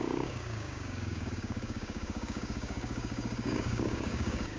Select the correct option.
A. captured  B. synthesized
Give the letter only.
B